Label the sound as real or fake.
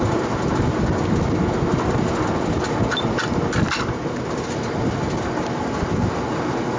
real